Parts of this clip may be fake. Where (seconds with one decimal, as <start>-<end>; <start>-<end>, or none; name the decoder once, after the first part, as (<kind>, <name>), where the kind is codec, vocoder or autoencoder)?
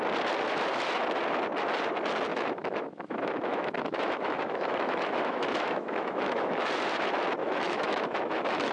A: 2.3-6.7 (autoencoder, DAC-VAE); 7.4-8.7